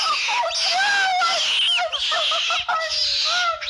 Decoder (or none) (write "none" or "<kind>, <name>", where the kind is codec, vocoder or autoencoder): none